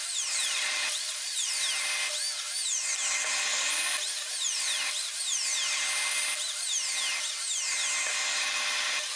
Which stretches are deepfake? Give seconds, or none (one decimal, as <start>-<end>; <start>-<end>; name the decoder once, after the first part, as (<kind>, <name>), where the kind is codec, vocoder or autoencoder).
0.4-1.5 (vocoder, Vocos)